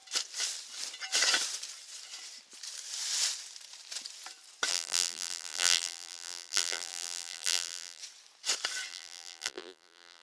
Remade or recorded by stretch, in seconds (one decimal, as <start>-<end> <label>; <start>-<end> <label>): 0.0-4.7 recorded; 4.7-8.0 remade; 8.0-8.9 recorded; 8.9-10.2 remade